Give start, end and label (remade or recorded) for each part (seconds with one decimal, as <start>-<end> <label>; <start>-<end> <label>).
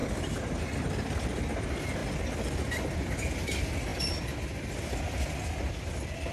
0.0-6.3 recorded